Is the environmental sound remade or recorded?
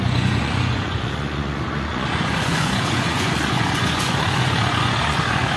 remade